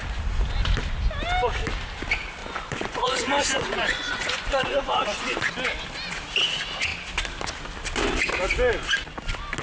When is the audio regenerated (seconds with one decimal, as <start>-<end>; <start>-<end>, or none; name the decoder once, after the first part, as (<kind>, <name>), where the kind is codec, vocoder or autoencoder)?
2.4-5.5 (vocoder, Vocos)

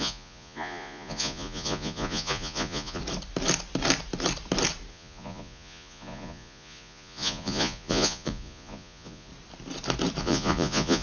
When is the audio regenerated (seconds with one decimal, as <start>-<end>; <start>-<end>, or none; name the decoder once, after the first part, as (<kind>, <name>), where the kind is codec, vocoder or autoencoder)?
0.0-3.0 (vocoder, Vocos); 4.9-9.3; 10.2-11.0

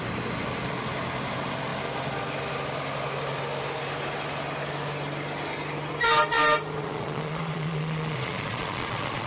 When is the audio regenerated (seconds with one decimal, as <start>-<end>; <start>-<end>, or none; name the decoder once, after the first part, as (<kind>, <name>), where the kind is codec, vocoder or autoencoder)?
6.8-9.3 (vocoder, Vocos)

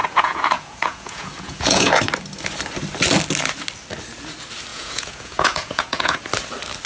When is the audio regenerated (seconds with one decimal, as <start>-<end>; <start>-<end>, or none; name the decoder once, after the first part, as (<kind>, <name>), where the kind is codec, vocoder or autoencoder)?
0.0-1.9 (vocoder, Vocos); 4.7-6.2

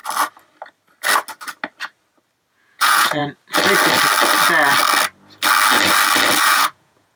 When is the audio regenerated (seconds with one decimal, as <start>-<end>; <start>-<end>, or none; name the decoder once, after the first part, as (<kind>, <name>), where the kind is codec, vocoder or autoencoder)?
2.5-3.2 (vocoder, Vocos); 6.4-7.2

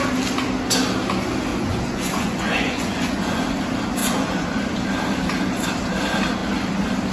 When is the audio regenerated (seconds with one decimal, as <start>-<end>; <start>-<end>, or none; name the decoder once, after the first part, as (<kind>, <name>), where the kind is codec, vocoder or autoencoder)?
1.5-3.6 (vocoder, Vocos); 4.0-4.6

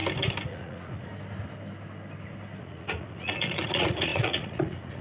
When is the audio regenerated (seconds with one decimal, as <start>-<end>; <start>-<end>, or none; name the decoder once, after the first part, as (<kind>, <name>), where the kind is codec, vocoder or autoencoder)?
0.5-1.1 (vocoder, Vocos); 2.6-5.0